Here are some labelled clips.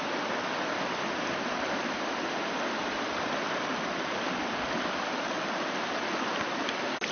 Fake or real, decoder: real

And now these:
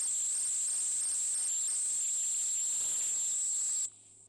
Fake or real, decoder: real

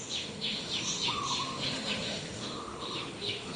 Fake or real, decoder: fake, autoencoder, DAC-VAE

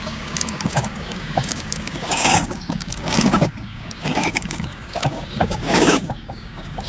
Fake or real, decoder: fake, codec, DAC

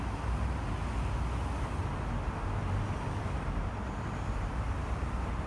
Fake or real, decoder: real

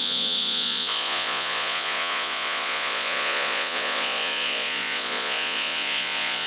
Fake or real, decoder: fake, vocoder, Vocos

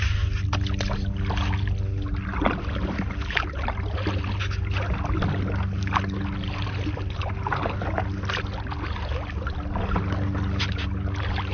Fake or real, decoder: real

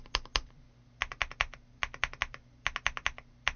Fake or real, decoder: real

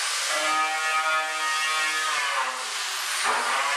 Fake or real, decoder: real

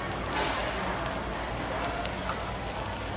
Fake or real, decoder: real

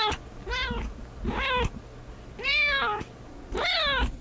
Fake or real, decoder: real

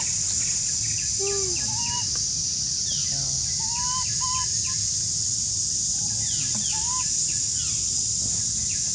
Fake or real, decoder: real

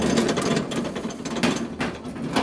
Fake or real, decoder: real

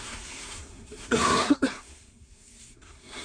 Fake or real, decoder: fake, codec, SNAC